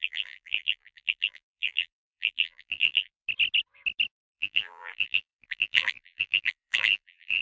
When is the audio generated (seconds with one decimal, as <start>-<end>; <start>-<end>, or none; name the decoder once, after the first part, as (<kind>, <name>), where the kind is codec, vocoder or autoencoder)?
0.0-3.1 (vocoder, BigVGAN v2); 4.2-7.4